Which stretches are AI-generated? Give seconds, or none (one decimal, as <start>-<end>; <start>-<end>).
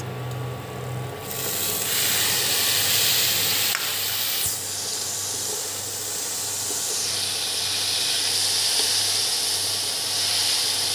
none